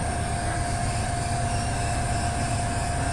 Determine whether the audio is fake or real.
real